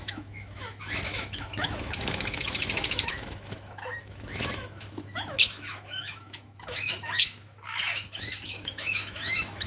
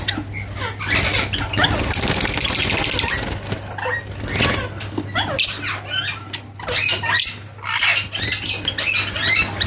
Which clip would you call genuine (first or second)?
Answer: second